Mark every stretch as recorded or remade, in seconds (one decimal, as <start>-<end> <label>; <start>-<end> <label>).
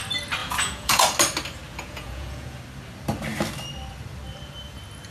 0.0-0.4 recorded; 0.4-1.0 remade; 1.0-1.7 recorded; 1.7-2.6 remade; 2.6-5.1 recorded